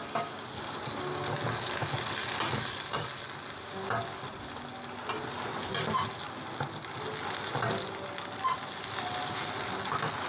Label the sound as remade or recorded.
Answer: recorded